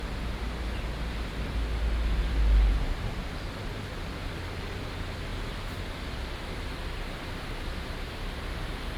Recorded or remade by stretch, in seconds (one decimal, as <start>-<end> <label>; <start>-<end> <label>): 0.0-9.0 recorded